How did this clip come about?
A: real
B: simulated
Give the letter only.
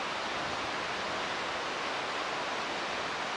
A